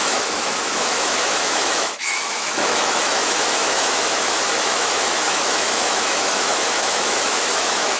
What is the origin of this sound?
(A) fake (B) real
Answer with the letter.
A